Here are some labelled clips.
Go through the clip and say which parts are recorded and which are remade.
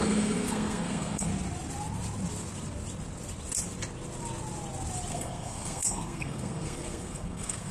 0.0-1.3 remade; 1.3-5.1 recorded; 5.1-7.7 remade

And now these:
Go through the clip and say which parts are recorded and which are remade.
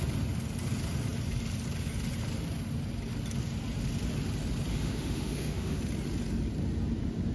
0.0-4.7 recorded; 4.7-5.8 remade; 5.8-7.3 recorded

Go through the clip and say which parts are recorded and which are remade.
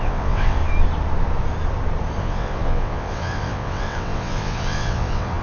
0.0-0.6 remade; 0.6-2.2 recorded; 2.2-5.4 remade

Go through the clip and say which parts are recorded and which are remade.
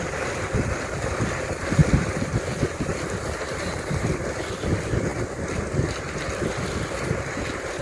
0.0-7.8 recorded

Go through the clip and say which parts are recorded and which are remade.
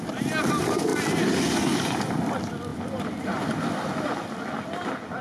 0.0-5.2 recorded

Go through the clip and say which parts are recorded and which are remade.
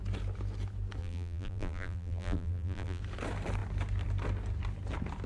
0.0-1.0 recorded; 1.0-3.0 remade; 3.0-5.3 recorded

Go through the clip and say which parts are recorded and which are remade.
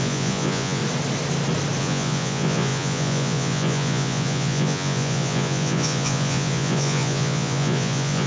0.0-0.8 remade; 0.8-1.8 recorded; 1.8-8.3 remade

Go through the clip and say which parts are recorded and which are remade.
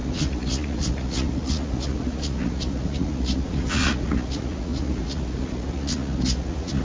0.0-6.8 remade